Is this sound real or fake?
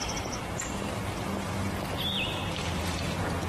real